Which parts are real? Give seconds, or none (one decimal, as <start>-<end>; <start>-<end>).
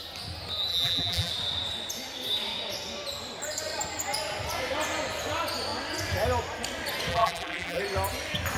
0.0-0.7; 1.3-7.1; 7.8-8.6